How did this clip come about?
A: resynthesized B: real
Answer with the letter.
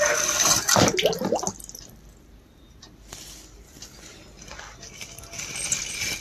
B